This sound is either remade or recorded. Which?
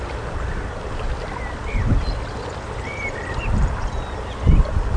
recorded